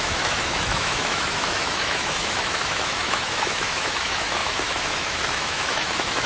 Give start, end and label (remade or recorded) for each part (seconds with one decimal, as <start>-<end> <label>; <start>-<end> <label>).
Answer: 0.0-6.3 remade